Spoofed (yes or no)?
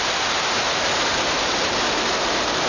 yes